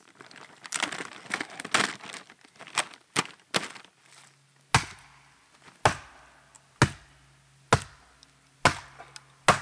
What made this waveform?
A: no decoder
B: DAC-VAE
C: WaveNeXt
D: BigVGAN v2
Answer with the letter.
A